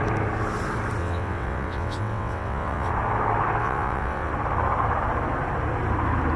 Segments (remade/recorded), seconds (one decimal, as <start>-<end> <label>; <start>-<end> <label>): 0.0-1.0 recorded; 1.0-2.9 remade; 2.9-3.6 recorded; 3.6-4.3 remade; 4.3-6.4 recorded